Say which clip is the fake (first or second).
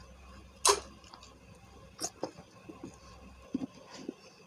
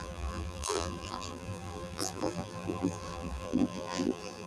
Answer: second